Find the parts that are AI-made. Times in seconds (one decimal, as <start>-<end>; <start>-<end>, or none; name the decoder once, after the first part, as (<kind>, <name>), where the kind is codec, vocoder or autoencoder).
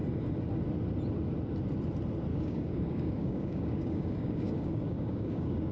2.3-5.7 (codec, DAC)